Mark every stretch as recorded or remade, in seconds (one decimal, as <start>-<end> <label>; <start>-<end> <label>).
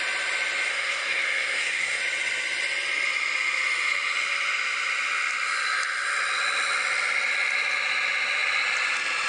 0.0-0.7 recorded; 0.7-2.0 remade; 2.0-9.3 recorded